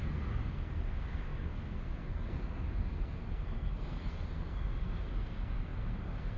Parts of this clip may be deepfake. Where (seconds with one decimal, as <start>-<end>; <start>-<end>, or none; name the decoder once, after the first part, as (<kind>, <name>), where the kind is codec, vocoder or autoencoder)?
0.0-6.4 (codec, SNAC)